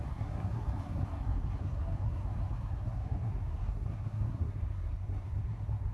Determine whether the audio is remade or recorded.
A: remade